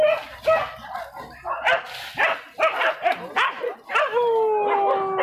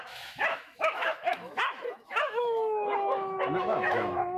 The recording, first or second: first